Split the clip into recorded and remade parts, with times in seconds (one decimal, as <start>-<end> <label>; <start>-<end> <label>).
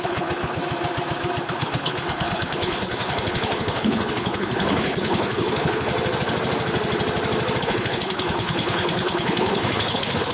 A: 0.0-0.6 remade; 0.6-1.4 recorded; 1.4-5.9 remade; 5.9-7.6 recorded; 7.6-10.3 remade